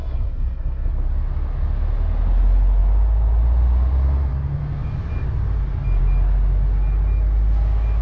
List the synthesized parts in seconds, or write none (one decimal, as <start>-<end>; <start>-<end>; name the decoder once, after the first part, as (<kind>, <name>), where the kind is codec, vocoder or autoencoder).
0.0-0.9 (codec, SNAC)